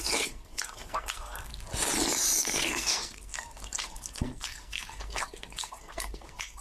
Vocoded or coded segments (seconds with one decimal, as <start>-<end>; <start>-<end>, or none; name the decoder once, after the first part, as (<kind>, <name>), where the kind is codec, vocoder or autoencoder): 0.0-1.5 (codec, SNAC); 2.4-6.6